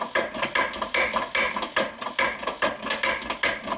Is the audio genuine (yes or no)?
yes